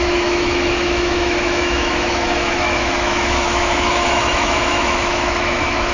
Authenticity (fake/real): fake